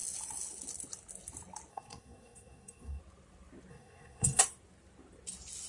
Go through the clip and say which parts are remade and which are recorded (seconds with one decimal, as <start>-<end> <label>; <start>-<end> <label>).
0.0-1.7 recorded; 1.7-3.0 remade; 3.0-3.7 recorded; 3.7-4.4 remade; 4.4-5.7 recorded